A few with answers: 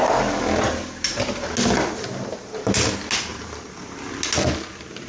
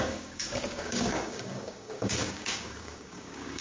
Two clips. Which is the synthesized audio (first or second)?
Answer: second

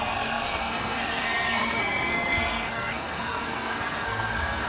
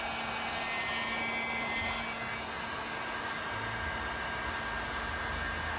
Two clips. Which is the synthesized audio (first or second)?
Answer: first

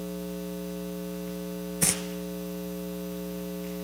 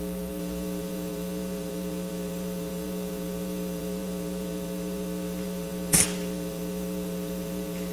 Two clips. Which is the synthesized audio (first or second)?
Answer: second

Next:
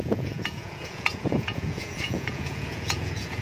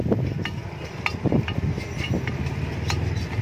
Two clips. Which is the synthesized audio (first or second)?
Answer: first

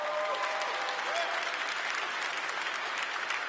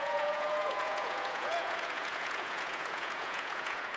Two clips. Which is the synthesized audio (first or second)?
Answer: second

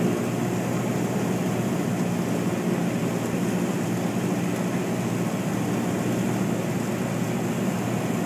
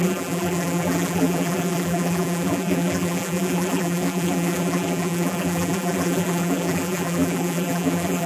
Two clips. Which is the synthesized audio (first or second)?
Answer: second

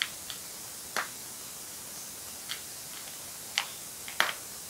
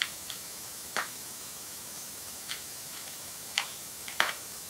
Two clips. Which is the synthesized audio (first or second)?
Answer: second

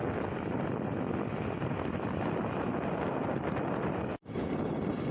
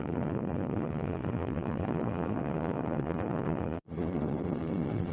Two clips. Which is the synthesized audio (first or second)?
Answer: second